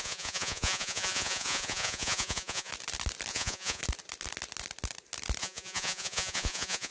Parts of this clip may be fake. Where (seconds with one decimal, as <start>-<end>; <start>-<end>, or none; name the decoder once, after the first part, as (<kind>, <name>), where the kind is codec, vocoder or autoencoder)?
0.0-2.7 (vocoder, Vocos); 3.3-3.8; 5.4-6.9